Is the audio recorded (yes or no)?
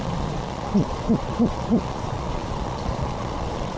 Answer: no